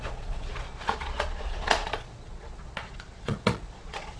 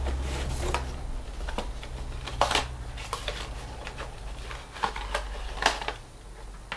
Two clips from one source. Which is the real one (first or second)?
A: second